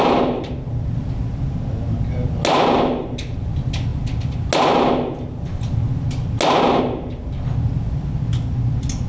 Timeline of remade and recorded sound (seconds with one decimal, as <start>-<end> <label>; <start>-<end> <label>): 0.0-9.1 recorded